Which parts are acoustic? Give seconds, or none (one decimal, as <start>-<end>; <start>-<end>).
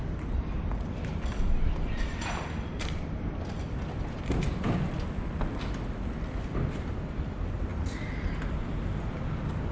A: 0.0-9.7